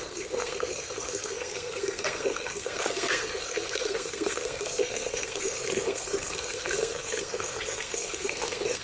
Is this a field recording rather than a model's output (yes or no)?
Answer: no